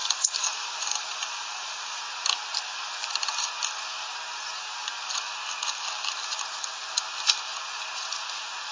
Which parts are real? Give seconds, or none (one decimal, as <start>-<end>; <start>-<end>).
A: 2.0-8.7